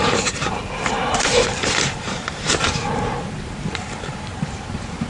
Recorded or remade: remade